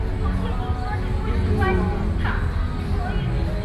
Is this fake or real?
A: real